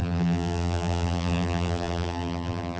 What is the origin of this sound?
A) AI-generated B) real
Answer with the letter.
A